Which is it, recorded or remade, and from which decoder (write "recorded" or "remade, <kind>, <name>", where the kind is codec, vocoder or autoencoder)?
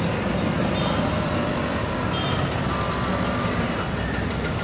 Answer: recorded